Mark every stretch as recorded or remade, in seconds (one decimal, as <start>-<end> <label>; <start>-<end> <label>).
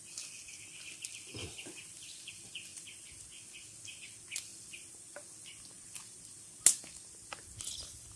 0.0-1.4 recorded; 1.4-2.2 remade; 2.2-2.7 recorded; 2.7-3.4 remade; 3.4-8.2 recorded